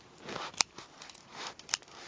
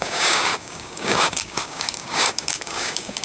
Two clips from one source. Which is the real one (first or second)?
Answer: first